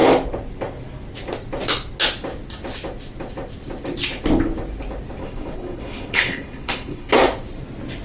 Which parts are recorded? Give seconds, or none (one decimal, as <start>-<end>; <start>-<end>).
0.0-5.2; 7.1-8.0